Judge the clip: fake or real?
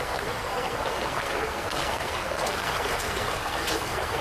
fake